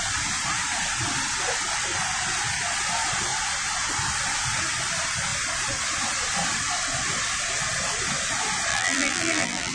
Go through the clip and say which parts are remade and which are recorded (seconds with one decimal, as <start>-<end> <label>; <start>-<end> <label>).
0.0-8.7 recorded; 8.7-9.7 remade